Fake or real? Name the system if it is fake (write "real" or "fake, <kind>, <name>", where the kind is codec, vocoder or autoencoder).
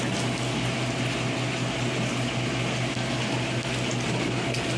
real